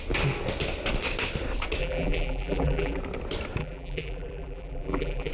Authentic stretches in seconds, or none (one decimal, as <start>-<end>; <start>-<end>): 0.0-1.8; 3.0-3.6